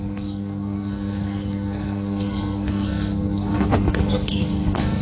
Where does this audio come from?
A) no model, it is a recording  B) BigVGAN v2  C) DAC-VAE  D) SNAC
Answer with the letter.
D